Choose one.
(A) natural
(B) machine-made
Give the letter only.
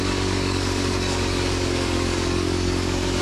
B